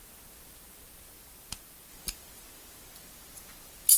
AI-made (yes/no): no